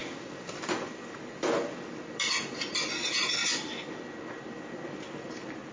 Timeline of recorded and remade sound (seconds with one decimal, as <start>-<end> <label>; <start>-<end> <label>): 0.0-5.7 recorded